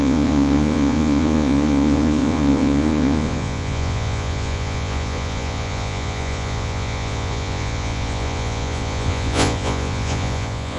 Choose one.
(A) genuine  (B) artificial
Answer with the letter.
B